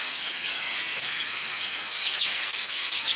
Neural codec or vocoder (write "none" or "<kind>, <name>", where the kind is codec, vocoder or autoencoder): codec, SNAC